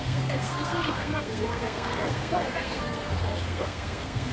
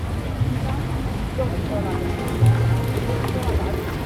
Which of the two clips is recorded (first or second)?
second